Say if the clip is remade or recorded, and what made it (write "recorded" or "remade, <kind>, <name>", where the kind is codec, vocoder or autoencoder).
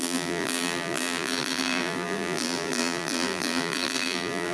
remade, vocoder, BigVGAN v2